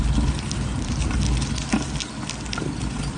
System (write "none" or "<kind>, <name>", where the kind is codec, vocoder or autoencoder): none